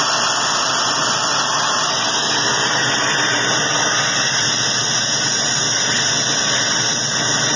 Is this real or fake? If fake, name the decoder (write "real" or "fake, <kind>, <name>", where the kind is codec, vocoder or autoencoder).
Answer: real